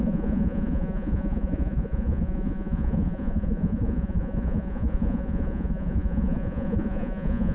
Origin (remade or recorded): remade